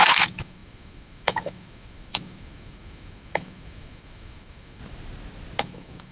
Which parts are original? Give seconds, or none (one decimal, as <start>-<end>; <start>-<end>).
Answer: 4.8-5.6